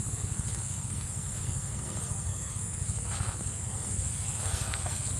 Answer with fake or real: fake